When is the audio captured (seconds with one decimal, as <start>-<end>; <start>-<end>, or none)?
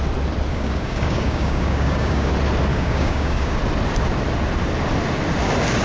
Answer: 0.0-0.5; 2.3-2.7; 3.6-5.8